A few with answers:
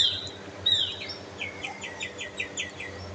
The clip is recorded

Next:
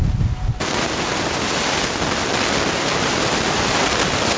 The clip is recorded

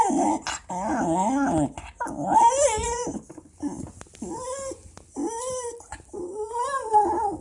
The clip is recorded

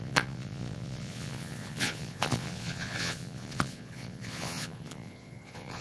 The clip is remade